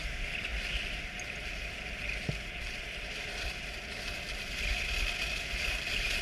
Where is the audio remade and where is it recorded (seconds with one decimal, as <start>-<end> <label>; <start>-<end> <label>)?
0.0-0.5 recorded; 0.5-4.2 remade; 4.2-6.2 recorded